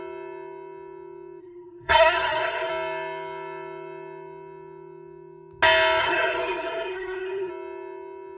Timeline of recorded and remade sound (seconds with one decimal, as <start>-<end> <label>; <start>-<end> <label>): 0.0-1.4 recorded; 1.4-2.7 remade; 2.7-6.0 recorded; 6.0-7.5 remade; 7.5-8.4 recorded